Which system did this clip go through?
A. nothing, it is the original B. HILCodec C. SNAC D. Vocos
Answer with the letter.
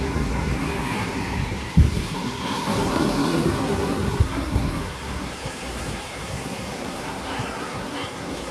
C